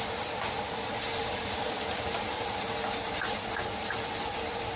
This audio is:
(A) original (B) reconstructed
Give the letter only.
B